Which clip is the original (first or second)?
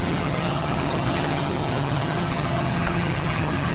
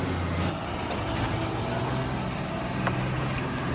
second